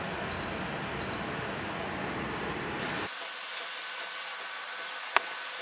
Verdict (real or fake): real